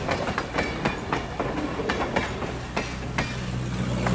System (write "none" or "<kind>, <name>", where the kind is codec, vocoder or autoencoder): none